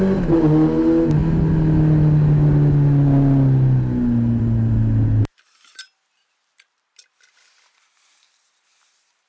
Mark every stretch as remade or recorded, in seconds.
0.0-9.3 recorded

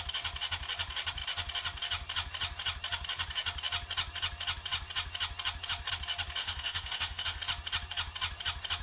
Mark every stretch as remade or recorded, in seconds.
0.0-6.4 recorded; 6.4-7.4 remade; 7.4-8.8 recorded

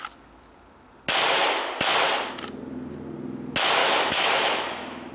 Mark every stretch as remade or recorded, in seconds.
0.0-3.8 recorded; 3.8-5.1 remade

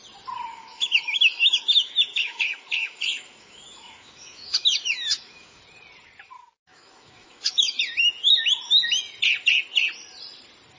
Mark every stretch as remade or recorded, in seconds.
0.0-0.5 recorded; 0.5-5.6 remade; 5.6-6.6 recorded; 6.6-7.8 remade; 7.8-10.8 recorded

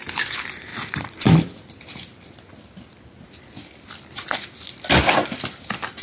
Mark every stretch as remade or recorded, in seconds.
0.0-6.0 recorded